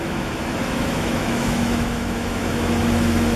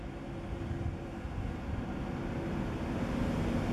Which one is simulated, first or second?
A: first